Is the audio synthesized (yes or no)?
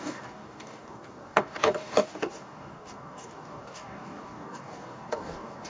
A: yes